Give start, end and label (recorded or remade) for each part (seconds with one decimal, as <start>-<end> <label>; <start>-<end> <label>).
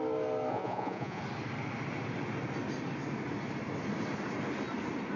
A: 0.0-0.5 recorded; 0.5-1.2 remade; 1.2-5.2 recorded